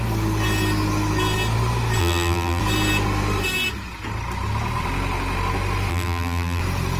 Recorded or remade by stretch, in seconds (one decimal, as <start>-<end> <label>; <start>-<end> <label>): 0.0-2.0 recorded; 2.0-2.6 remade; 2.6-5.9 recorded; 5.9-6.6 remade; 6.6-7.0 recorded